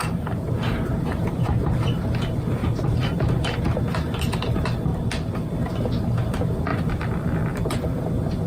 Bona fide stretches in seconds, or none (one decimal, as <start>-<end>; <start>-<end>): 0.5-2.6; 3.6-6.7; 7.8-8.5